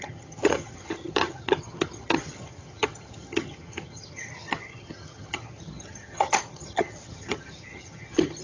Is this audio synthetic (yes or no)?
yes